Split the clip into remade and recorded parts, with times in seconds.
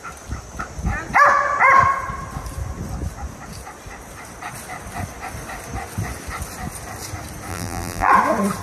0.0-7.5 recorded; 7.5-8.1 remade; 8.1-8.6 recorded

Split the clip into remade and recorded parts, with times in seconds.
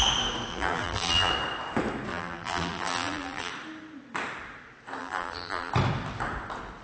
0.0-0.5 recorded; 0.5-1.3 remade; 1.3-2.1 recorded; 2.1-3.5 remade; 3.5-5.0 recorded; 5.0-5.7 remade; 5.7-6.8 recorded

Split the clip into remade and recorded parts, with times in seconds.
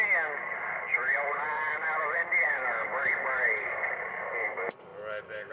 0.0-1.0 recorded; 1.0-4.3 remade; 4.3-4.9 recorded; 4.9-5.5 remade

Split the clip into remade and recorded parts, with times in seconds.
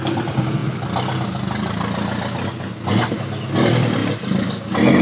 0.0-0.6 remade; 0.6-3.6 recorded; 3.6-4.0 remade; 4.0-4.6 recorded; 4.6-5.0 remade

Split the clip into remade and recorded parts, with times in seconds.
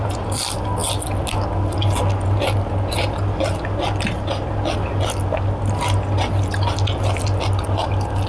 0.0-8.3 recorded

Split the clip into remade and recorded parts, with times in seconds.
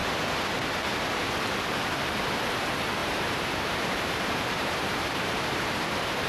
0.0-2.0 remade; 2.0-3.0 recorded; 3.0-6.3 remade